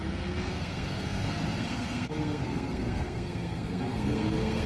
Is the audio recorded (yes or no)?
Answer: no